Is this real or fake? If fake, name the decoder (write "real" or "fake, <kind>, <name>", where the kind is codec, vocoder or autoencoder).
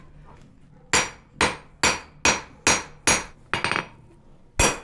real